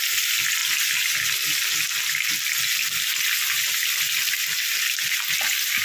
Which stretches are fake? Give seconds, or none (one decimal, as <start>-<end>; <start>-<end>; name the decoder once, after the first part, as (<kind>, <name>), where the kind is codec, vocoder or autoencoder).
none